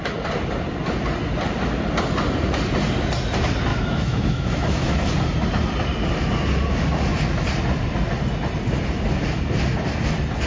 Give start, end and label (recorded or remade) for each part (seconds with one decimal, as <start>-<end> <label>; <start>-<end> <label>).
0.0-3.7 recorded; 3.7-5.1 remade; 5.1-10.5 recorded